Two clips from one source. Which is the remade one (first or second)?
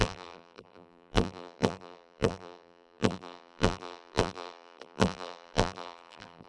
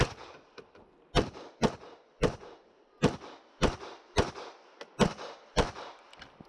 first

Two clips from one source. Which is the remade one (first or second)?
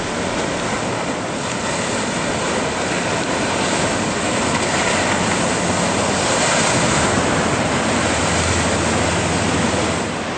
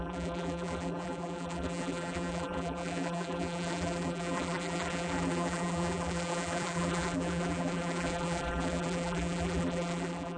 second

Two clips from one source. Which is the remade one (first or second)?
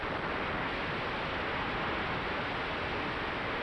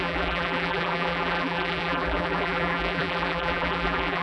second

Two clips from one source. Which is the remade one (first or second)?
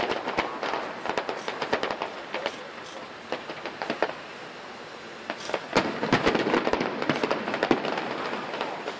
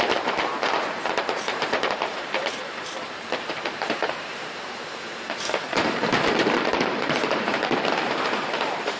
second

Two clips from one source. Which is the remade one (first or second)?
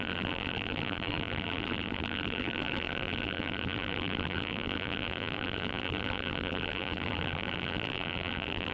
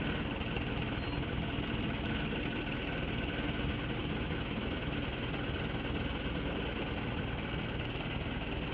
first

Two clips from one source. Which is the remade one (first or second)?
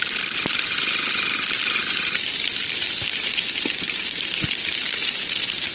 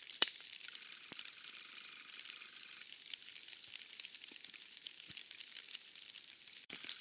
second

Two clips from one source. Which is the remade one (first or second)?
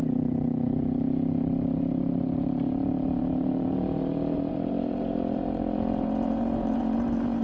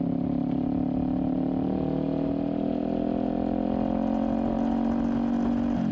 first